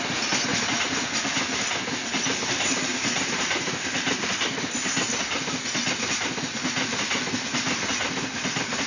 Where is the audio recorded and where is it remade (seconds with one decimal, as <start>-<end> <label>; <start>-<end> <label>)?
0.0-8.9 recorded